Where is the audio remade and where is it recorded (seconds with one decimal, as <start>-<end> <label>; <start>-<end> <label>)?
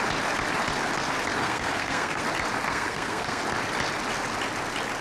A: 0.0-1.4 recorded; 1.4-2.2 remade; 2.2-2.7 recorded; 2.7-3.4 remade; 3.4-5.0 recorded